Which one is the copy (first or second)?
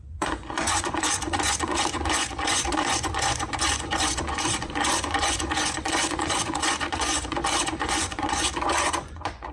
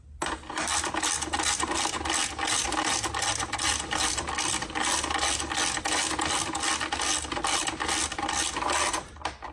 first